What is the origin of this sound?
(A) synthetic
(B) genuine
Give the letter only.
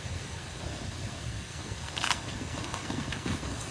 A